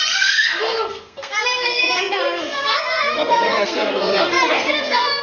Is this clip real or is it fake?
fake